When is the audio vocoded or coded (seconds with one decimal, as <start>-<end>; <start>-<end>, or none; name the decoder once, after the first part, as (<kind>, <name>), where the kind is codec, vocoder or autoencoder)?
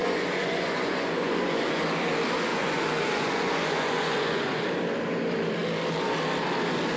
0.0-1.8 (vocoder, Vocos); 2.5-4.6